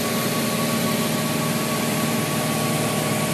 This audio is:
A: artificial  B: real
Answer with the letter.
B